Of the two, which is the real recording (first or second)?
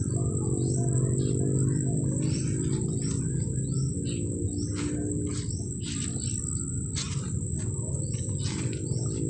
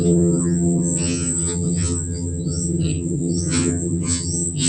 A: first